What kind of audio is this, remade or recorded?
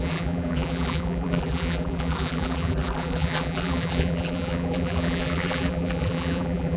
remade